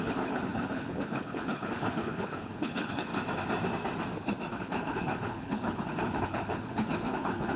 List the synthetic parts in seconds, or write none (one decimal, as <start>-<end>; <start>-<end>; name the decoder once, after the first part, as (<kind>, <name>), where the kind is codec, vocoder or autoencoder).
0.0-3.1 (codec, HILCodec); 4.5-7.6